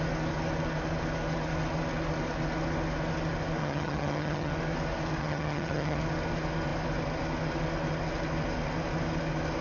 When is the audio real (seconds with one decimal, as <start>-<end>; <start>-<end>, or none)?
0.0-3.6; 4.5-5.2; 6.0-9.6

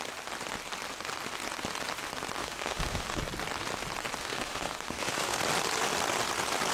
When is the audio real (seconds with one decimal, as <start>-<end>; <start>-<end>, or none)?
0.0-2.4; 3.2-4.2; 5.4-6.7

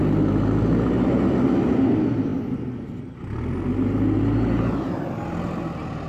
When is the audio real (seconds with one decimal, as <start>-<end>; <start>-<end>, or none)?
0.0-6.1

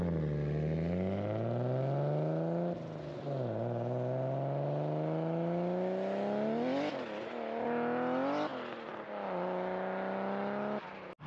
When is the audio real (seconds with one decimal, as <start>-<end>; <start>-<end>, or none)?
0.0-11.3

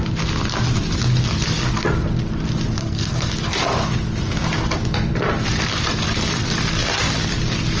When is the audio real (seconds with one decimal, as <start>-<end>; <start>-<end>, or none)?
0.0-2.8; 3.3-7.8

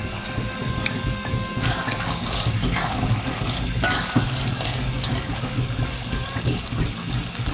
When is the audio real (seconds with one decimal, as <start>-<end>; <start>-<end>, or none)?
none

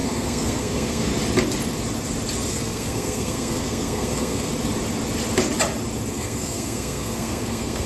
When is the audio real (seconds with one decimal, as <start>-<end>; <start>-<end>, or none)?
1.1-2.5; 4.5-6.1

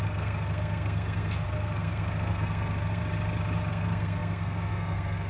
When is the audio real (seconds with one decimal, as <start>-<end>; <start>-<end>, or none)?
3.0-3.7